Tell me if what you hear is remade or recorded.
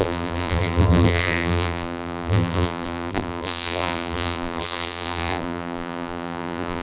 remade